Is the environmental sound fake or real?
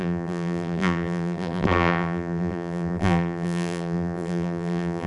fake